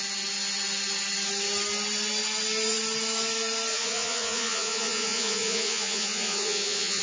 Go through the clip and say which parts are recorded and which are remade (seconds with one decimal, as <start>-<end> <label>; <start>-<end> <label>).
0.0-3.7 recorded; 3.7-7.0 remade